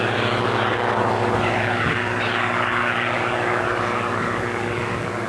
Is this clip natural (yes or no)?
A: no